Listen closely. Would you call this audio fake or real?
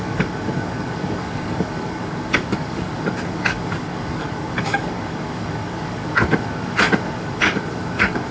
fake